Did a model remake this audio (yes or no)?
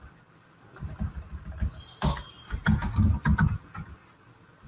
no